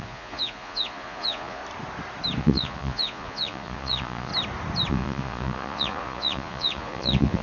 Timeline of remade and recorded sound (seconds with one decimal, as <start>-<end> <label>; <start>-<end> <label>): 0.0-1.6 remade; 1.6-2.4 recorded; 2.4-4.3 remade; 4.3-4.9 recorded; 4.9-7.4 remade